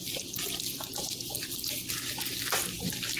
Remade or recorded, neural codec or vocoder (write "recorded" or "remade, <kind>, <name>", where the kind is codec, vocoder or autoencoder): recorded